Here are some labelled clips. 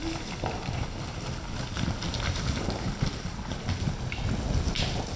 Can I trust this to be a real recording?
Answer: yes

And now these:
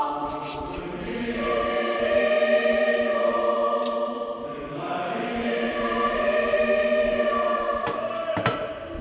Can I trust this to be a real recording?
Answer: yes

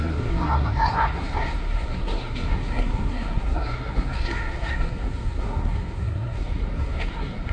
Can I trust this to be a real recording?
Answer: no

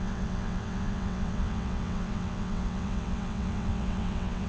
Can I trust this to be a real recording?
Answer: no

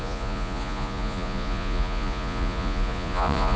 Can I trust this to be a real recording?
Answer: no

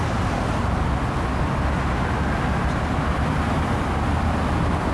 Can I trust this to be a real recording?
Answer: yes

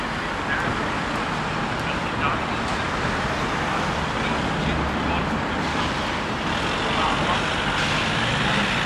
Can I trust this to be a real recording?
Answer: yes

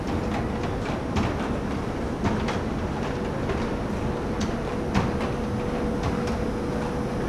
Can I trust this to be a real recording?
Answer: yes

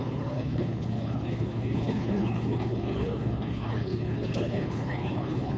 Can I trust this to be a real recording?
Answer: no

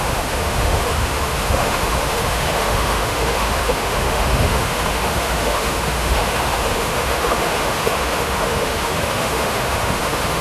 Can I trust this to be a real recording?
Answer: no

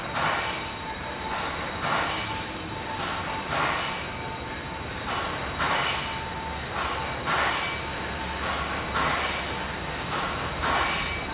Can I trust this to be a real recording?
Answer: yes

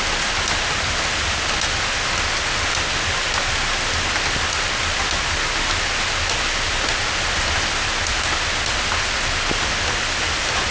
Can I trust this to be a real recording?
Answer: yes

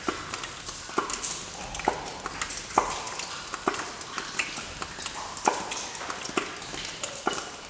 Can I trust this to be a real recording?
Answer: yes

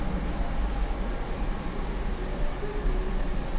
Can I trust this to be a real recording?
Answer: yes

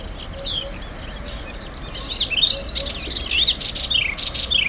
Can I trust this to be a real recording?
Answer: yes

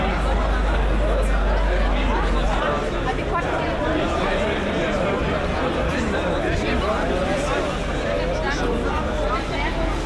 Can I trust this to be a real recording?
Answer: yes